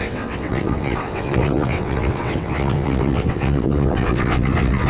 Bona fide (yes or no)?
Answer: no